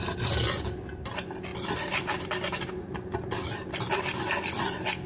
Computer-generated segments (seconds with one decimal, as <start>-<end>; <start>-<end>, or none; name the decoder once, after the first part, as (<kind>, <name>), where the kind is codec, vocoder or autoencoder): none